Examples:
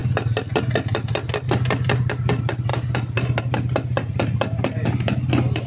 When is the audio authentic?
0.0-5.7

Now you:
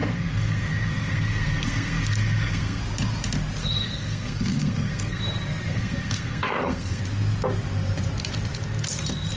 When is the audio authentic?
2.8-3.6; 5.2-5.7; 7.0-9.4

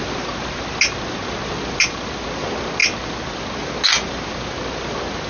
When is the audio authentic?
0.0-5.3

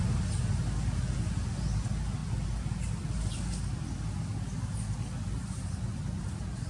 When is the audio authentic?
0.0-6.7

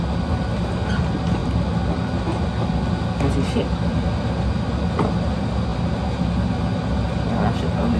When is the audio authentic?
0.0-8.0